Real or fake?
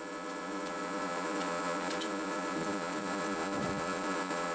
fake